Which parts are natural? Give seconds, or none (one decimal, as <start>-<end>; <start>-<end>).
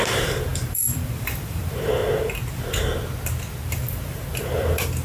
2.0-3.7